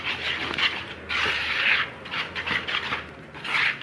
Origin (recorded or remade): recorded